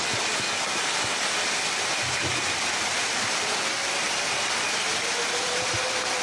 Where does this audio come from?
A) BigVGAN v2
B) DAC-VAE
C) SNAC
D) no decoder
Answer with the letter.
D